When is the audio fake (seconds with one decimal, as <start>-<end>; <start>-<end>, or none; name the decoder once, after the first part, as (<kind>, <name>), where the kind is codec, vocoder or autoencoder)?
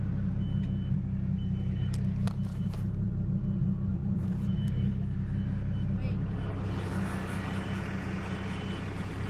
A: 2.5-3.4 (vocoder, BigVGAN v2); 4.0-5.0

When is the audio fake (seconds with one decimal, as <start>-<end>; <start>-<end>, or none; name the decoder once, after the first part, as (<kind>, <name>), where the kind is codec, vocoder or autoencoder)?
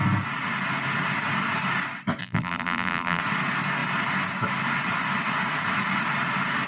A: 2.2-3.2 (vocoder, BigVGAN v2)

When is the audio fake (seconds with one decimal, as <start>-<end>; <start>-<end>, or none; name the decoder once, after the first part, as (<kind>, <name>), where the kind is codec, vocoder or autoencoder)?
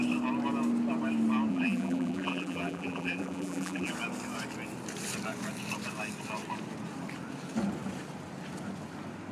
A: 1.5-3.9 (vocoder, BigVGAN v2)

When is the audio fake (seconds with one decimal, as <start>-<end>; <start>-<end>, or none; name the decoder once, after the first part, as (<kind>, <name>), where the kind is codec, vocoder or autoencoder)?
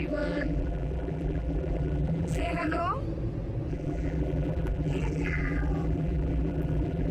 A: 0.0-2.8 (vocoder, BigVGAN v2); 3.7-7.1